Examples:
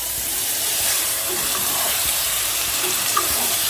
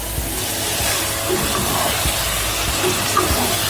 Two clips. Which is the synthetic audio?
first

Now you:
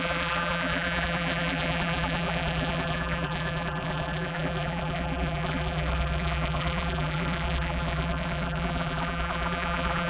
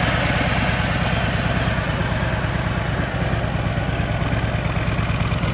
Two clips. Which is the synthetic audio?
first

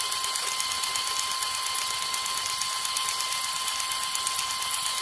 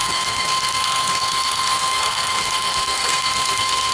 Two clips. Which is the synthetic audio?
second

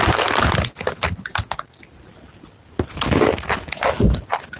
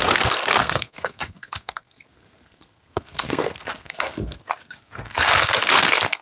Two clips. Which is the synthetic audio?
second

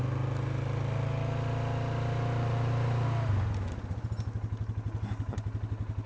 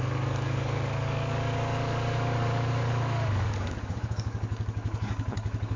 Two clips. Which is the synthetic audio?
second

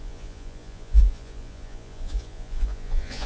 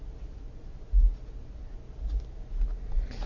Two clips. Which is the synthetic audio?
first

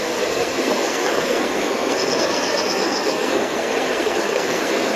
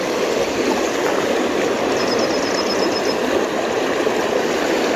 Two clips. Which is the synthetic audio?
first